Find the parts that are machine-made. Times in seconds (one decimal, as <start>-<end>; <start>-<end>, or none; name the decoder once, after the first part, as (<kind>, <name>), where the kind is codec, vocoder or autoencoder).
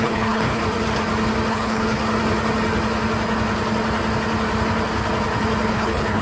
0.0-0.6 (codec, HILCodec); 1.5-2.0; 5.7-6.2